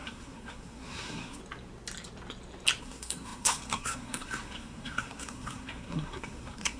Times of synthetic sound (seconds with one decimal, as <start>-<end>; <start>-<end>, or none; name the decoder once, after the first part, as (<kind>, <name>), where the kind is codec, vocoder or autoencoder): 0.0-1.4 (codec, SNAC); 2.8-6.8